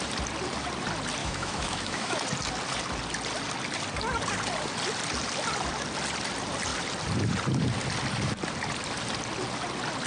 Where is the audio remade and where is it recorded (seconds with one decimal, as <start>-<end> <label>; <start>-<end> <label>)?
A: 0.0-1.2 recorded; 1.2-2.2 remade; 2.2-10.1 recorded